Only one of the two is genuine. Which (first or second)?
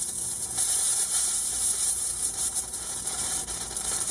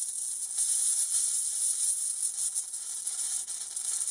second